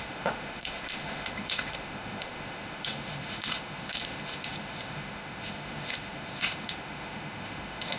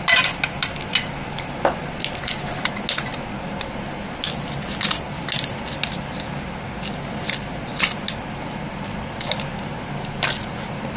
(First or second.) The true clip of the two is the second